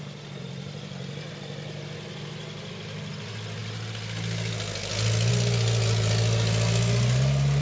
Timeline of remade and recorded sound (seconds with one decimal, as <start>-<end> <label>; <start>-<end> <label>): 0.0-7.6 recorded